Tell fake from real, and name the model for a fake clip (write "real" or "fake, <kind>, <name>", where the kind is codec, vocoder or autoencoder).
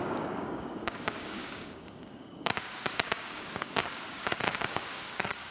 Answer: fake, codec, DAC